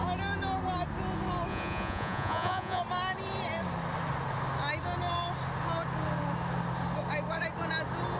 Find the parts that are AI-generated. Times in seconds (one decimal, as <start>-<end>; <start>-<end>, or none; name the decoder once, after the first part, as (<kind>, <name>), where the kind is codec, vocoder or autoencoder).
1.5-2.8 (vocoder, Vocos)